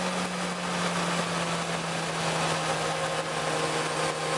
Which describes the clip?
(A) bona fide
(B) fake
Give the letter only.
A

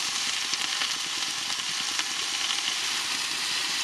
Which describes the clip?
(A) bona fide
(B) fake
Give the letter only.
A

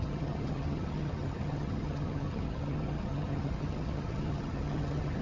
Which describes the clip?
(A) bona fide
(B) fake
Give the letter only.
B